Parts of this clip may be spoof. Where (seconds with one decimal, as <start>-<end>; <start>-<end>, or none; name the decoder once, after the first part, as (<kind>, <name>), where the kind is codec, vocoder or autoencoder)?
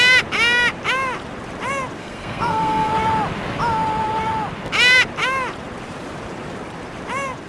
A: 2.0-2.9 (codec, SNAC)